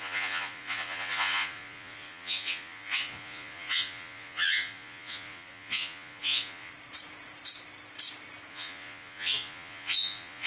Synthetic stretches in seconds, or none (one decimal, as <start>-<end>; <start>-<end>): 0.0-6.7; 8.5-10.5